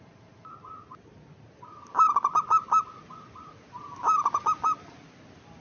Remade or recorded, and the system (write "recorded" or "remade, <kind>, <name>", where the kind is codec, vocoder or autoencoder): recorded